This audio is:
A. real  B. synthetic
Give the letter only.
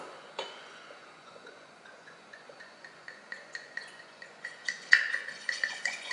B